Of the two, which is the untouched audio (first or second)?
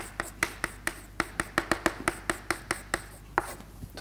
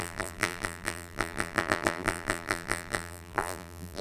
first